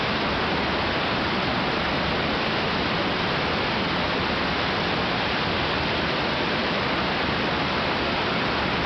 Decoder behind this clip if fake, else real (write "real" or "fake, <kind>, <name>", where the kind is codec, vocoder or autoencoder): real